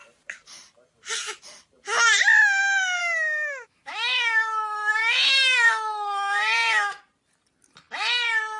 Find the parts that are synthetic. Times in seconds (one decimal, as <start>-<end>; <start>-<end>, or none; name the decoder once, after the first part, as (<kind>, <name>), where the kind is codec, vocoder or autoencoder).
3.0-7.0 (autoencoder, DAC-VAE)